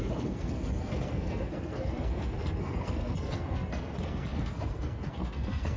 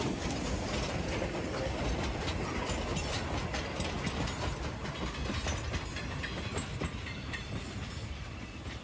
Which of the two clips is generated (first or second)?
first